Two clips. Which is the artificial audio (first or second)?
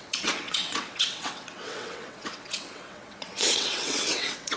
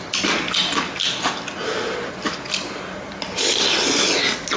first